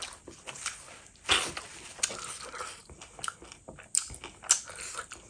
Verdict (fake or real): real